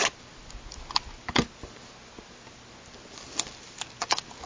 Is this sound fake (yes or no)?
no